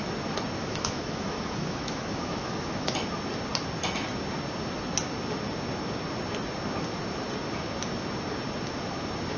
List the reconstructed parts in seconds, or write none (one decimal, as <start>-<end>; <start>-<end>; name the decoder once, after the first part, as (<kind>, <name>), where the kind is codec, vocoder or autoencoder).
0.6-2.9 (autoencoder, DAC-VAE)